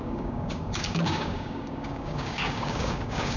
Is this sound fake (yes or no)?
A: yes